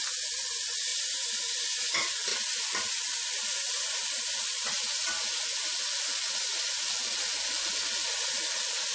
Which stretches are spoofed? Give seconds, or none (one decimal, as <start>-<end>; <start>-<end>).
0.9-1.9